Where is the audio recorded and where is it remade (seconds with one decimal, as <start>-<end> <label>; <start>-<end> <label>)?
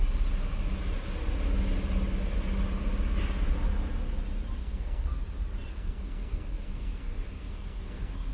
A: 0.0-4.6 recorded; 4.6-5.2 remade; 5.2-5.7 recorded; 5.7-8.3 remade